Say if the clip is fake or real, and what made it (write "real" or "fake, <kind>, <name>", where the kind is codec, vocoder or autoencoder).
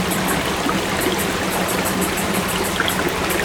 real